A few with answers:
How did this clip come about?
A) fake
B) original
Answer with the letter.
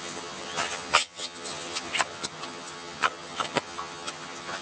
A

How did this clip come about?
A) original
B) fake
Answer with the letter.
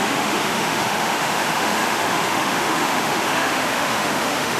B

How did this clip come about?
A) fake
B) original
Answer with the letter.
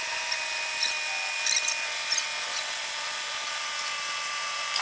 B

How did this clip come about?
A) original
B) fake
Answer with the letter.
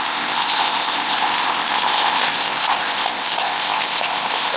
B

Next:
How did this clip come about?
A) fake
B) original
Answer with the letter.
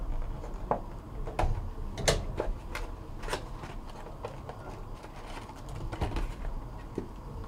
B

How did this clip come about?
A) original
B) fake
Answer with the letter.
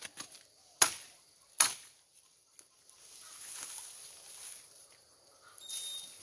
A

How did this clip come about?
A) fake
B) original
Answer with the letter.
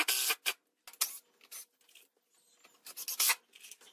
B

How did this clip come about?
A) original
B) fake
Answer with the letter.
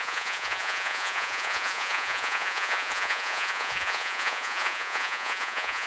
B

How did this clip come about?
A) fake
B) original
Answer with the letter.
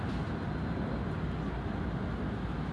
B